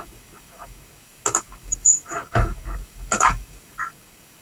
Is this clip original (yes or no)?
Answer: no